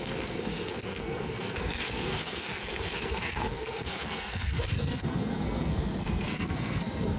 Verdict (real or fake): fake